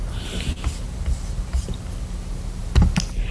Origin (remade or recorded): recorded